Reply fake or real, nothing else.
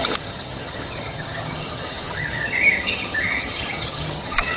fake